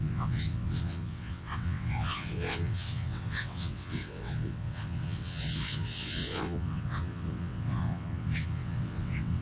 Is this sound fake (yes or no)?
yes